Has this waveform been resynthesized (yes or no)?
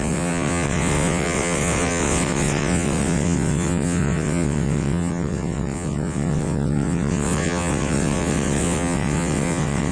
yes